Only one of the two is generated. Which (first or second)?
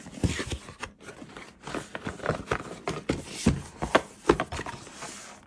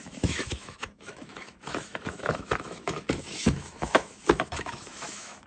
second